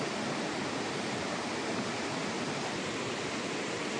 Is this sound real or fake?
real